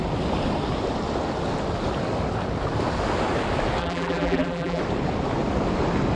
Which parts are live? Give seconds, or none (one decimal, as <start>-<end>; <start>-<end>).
0.0-3.8; 4.8-6.2